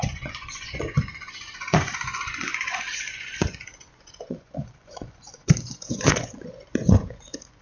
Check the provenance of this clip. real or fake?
fake